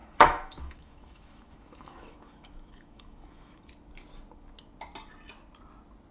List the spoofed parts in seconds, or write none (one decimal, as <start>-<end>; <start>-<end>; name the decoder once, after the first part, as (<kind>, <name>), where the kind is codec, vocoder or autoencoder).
0.0-3.7 (autoencoder, DAC-VAE)